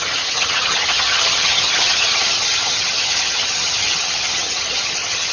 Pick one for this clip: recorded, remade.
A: remade